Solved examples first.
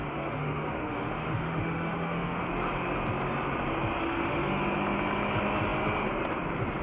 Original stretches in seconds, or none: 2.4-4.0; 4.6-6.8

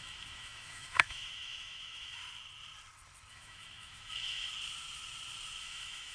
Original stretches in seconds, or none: 2.2-3.3; 4.5-5.6

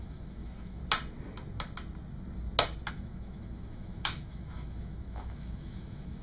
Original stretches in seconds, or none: 0.8-2.9

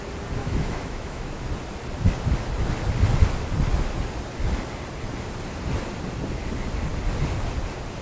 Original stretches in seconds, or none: 0.0-0.4; 1.4-8.0

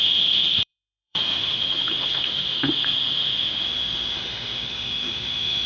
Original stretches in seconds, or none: none

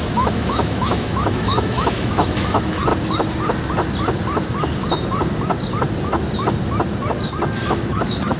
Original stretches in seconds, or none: 2.9-7.7